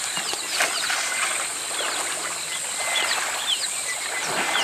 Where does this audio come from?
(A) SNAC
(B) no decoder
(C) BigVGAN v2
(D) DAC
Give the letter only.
B